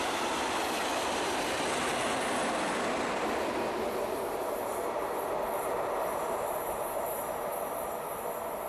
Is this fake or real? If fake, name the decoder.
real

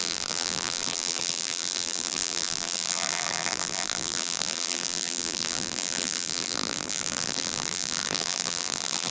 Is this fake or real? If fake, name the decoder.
fake, vocoder, BigVGAN v2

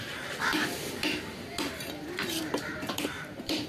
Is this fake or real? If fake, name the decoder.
fake, vocoder, BigVGAN v2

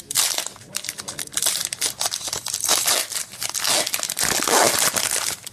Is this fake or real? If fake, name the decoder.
real